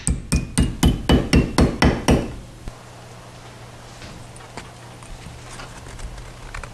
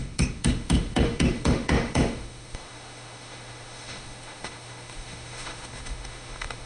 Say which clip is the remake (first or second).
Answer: second